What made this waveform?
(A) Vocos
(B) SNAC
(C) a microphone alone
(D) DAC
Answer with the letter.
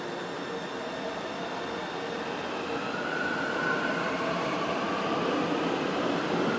C